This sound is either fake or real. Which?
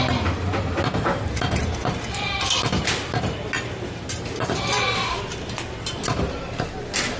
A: real